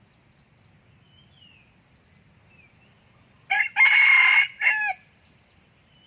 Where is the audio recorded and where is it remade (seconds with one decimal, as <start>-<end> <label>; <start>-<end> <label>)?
0.0-6.1 recorded